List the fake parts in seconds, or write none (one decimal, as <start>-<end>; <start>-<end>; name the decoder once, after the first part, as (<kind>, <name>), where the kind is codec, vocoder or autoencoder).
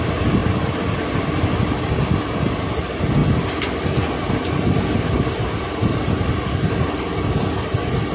none